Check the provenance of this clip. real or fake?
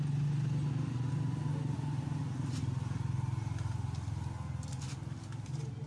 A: real